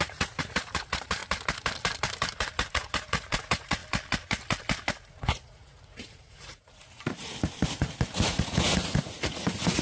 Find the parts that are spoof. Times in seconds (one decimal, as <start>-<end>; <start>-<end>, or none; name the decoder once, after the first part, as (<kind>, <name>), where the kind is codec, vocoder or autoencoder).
0.0-1.2 (vocoder, Vocos); 2.7-3.8; 4.9-7.3; 7.8-9.8